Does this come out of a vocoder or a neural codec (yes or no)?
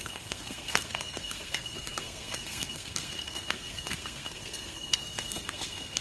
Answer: yes